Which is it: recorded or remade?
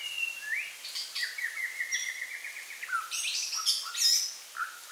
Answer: recorded